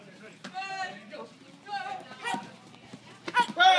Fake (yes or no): no